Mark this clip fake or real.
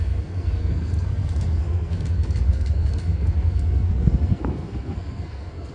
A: fake